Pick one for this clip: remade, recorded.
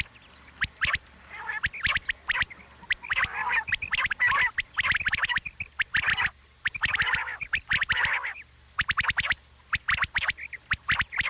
recorded